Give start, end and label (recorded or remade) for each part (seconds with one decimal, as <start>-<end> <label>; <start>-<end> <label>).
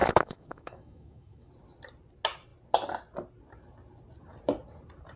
0.0-1.5 remade; 1.5-5.2 recorded